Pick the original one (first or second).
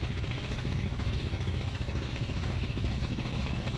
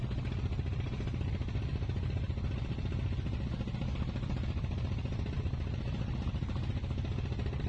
second